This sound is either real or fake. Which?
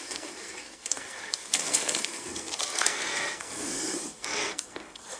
fake